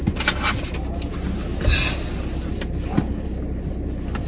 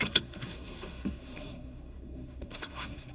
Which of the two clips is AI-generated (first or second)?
second